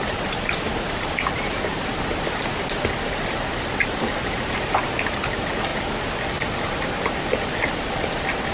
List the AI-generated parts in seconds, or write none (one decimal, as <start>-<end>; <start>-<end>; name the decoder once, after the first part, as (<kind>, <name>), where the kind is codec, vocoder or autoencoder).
0.0-5.7 (vocoder, BigVGAN v2); 7.0-8.5